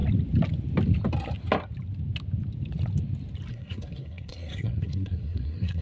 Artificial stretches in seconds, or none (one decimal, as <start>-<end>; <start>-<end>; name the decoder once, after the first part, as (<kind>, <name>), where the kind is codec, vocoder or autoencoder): 3.5-5.8 (codec, SNAC)